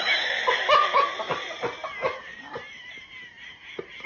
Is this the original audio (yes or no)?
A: yes